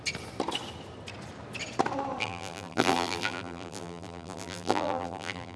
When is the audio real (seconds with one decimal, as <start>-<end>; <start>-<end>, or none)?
0.0-2.2